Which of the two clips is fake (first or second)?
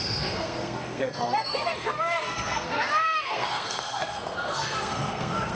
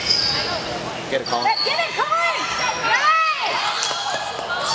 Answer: first